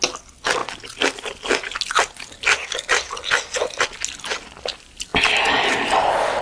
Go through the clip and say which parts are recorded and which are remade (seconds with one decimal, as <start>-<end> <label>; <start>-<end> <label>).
0.0-6.4 recorded